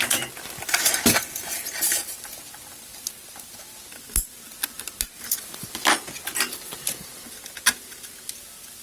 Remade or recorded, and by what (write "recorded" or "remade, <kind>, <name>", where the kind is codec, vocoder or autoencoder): recorded